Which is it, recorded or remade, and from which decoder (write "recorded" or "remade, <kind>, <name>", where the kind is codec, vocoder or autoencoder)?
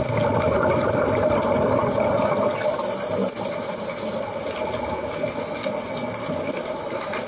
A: recorded